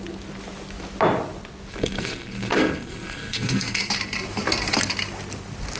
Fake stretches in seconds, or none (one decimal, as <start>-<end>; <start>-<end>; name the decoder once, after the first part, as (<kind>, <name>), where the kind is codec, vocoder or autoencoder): 1.7-3.9 (codec, SNAC)